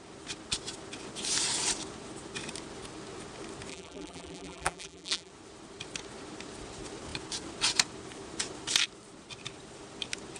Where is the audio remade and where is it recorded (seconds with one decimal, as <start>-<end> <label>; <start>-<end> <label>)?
0.0-3.7 recorded; 3.7-5.3 remade; 5.3-10.4 recorded